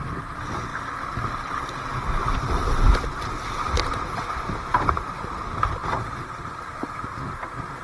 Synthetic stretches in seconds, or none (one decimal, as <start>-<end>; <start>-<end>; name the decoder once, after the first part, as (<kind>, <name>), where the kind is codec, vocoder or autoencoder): 2.6-4.9 (vocoder, BigVGAN v2)